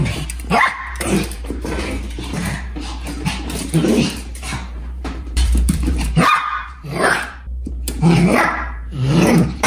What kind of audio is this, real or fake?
fake